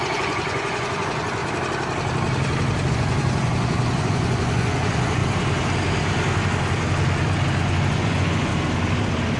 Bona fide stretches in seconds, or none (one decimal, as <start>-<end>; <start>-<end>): 1.4-2.9; 5.2-7.6; 8.5-9.4